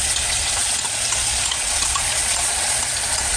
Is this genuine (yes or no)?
no